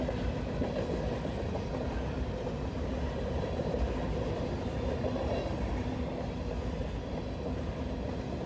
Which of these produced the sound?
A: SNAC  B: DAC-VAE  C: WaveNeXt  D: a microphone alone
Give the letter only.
D